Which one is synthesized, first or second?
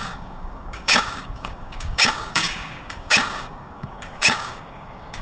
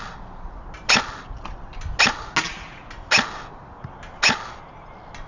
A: first